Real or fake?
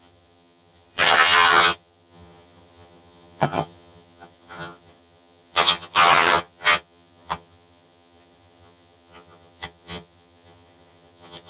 fake